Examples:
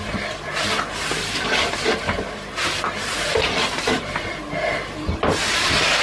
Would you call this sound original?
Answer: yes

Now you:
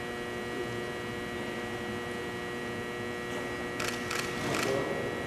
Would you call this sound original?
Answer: yes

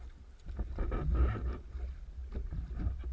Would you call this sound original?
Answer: yes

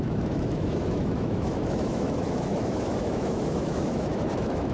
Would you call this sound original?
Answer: no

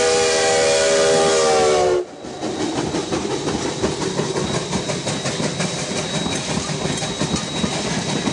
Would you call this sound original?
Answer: yes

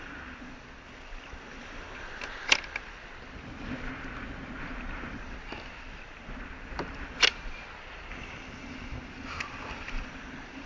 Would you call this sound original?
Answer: yes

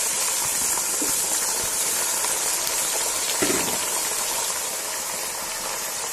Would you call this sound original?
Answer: yes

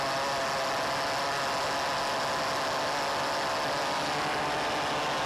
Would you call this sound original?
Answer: yes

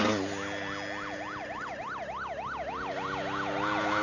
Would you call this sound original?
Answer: yes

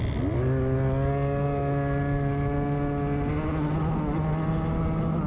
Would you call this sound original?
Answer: yes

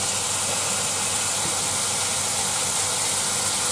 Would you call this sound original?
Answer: yes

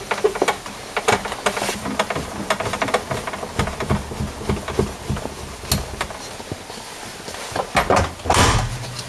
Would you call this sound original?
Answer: yes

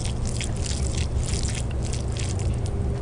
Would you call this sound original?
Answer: yes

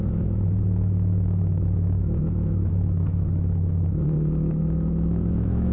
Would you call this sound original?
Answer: no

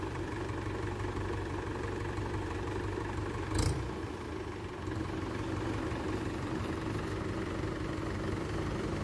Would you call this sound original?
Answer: no